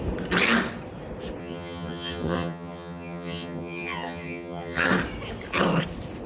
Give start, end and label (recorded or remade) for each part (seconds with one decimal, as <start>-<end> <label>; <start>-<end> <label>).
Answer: 0.0-1.4 recorded; 1.4-4.9 remade; 4.9-6.3 recorded